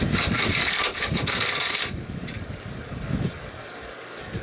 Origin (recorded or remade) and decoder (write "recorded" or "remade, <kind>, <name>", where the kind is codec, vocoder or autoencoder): remade, codec, DAC